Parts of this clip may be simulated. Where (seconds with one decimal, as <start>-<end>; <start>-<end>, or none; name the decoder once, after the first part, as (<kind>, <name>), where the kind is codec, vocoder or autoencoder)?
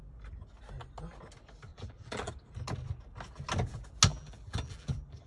1.7-2.3 (vocoder, BigVGAN v2); 4.1-5.3